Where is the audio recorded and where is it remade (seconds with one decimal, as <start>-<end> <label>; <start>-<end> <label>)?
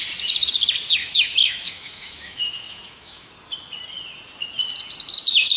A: 0.0-1.0 recorded; 1.0-3.3 remade; 3.3-5.6 recorded